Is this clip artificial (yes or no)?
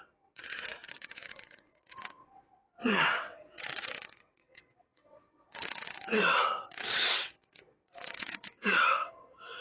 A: yes